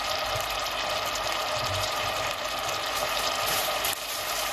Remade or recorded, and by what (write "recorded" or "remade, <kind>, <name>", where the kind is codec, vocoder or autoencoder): recorded